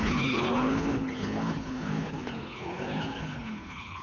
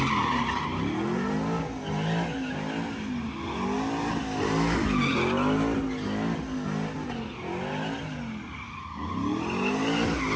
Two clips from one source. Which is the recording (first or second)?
second